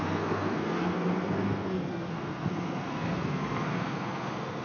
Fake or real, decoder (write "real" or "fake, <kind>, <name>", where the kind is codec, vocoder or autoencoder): fake, codec, SNAC